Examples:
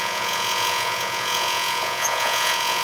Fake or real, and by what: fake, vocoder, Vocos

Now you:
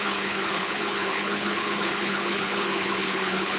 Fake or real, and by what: fake, codec, HILCodec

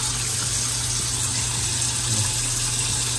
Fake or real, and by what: real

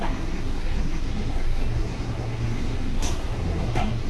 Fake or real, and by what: fake, codec, SNAC